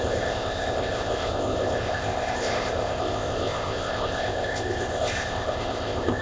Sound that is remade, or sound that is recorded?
remade